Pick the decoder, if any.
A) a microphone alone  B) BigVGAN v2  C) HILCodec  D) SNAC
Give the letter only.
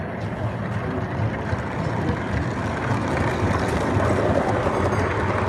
A